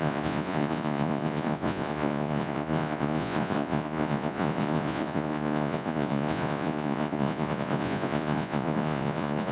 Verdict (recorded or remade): remade